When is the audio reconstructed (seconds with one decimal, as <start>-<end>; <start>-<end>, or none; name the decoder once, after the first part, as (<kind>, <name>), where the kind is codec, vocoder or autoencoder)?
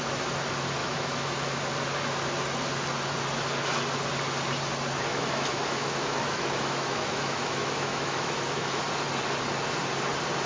0.8-1.6 (autoencoder, DAC-VAE); 5.1-8.8